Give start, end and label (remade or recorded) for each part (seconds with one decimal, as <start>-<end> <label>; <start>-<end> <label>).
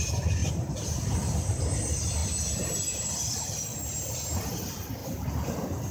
0.0-0.4 recorded; 0.4-1.6 remade; 1.6-5.0 recorded; 5.0-5.9 remade